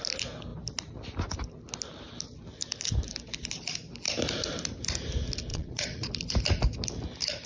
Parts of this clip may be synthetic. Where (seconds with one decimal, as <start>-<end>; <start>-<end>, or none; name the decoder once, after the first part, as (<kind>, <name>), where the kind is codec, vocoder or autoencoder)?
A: 5.5-6.1 (vocoder, Vocos)